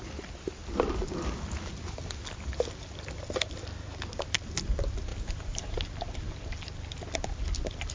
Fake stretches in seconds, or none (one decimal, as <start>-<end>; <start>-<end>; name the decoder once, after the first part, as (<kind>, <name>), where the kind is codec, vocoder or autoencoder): 5.1-5.8 (vocoder, BigVGAN v2)